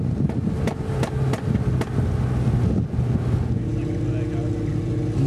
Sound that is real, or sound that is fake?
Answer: real